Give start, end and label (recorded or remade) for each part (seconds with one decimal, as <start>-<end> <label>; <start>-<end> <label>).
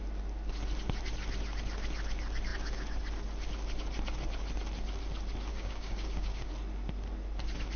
0.0-5.5 recorded; 5.5-6.5 remade; 6.5-7.8 recorded